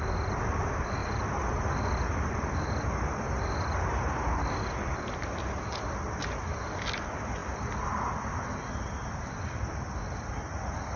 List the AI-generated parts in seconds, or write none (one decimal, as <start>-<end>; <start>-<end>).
1.0-2.8